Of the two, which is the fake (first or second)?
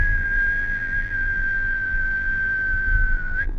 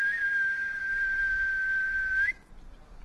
first